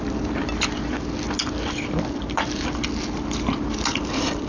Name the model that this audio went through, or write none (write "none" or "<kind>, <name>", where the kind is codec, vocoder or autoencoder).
none